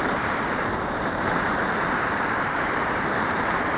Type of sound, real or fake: fake